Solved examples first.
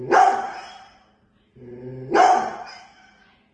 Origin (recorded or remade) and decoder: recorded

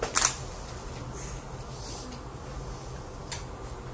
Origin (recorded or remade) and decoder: recorded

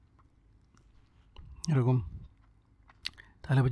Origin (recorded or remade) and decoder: recorded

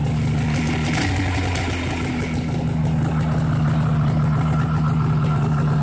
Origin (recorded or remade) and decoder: recorded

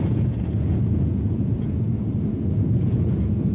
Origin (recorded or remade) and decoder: remade, vocoder, Vocos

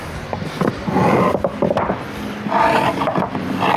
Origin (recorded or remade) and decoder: recorded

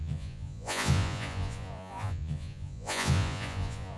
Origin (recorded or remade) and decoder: remade, vocoder, Vocos